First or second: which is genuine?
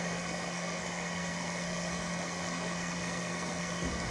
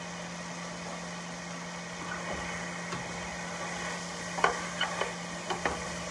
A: second